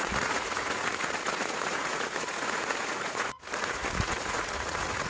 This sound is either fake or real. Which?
fake